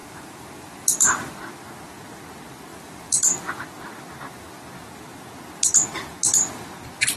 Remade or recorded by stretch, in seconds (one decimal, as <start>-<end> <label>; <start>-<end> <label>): 0.0-1.3 remade; 1.3-2.7 recorded; 2.7-3.4 remade; 3.4-7.2 recorded